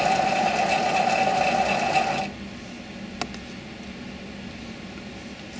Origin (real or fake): real